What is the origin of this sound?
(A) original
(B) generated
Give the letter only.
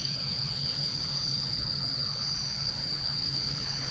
B